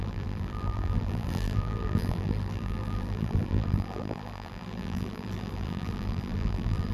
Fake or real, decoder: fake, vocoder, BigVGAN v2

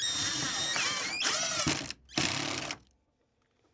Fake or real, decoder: real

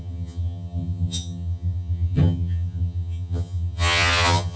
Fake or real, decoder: fake, vocoder, HiFi-GAN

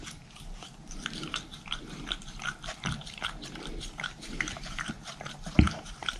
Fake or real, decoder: fake, vocoder, BigVGAN v2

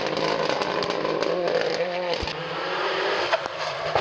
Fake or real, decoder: fake, vocoder, BigVGAN v2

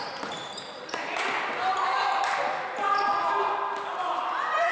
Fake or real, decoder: real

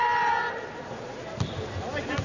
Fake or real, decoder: real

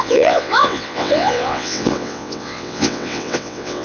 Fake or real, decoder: fake, vocoder, WaveNeXt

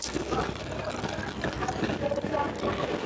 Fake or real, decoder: real